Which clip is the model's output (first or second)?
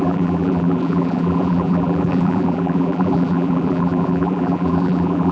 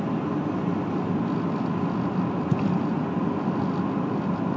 first